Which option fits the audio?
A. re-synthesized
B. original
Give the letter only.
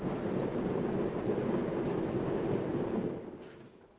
B